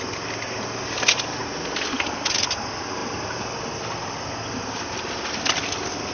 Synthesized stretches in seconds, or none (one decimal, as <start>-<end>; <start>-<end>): none